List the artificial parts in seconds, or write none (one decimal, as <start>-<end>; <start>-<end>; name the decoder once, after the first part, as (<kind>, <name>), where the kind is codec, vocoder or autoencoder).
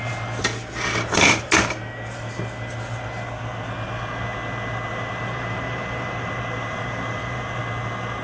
4.9-7.6 (vocoder, BigVGAN v2)